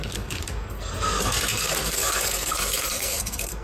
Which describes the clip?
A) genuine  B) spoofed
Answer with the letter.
B